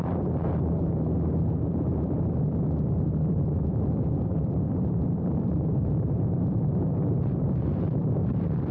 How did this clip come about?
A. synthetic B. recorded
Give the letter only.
A